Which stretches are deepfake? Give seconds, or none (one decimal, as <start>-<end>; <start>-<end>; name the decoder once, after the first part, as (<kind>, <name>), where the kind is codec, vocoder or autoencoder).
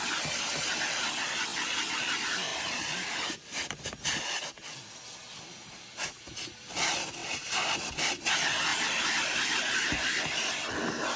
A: 1.5-2.1 (vocoder, BigVGAN v2); 2.5-3.9; 8.7-9.8